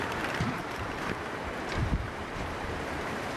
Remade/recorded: remade